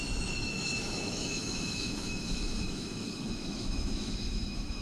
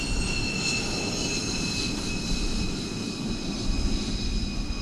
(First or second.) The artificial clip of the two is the first